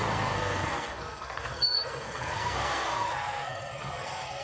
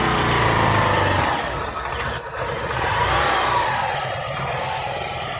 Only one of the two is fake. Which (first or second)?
first